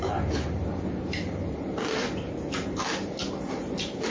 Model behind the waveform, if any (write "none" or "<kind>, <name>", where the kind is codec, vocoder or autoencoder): none